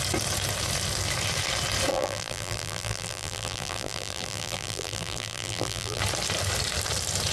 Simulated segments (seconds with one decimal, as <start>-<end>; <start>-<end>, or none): 1.9-6.0